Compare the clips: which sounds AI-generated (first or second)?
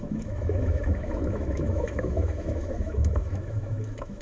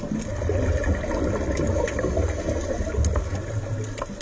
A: first